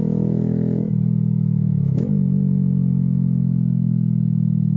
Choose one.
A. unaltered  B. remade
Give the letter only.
B